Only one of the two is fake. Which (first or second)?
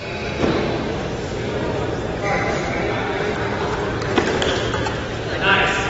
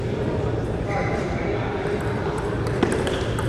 second